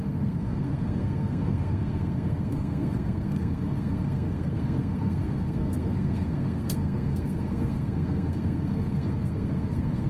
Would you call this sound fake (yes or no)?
yes